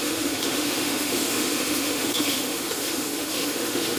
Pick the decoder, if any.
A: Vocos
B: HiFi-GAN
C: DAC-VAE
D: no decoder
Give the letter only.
C